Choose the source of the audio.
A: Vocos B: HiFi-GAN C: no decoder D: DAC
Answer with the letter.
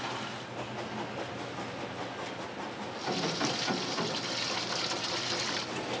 C